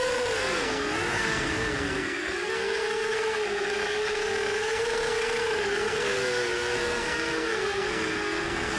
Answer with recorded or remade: remade